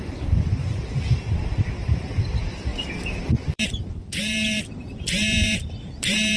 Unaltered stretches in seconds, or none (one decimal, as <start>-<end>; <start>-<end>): 0.6-1.6